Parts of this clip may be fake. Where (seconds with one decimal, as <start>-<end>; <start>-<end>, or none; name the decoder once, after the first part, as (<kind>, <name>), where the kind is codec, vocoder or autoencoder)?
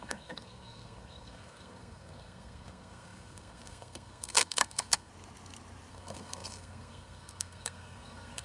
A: 0.0-5.1 (codec, SNAC); 5.9-8.4